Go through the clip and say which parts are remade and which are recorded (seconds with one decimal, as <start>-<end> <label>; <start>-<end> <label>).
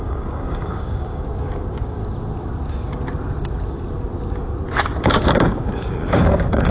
0.0-2.0 remade; 2.0-5.0 recorded; 5.0-6.7 remade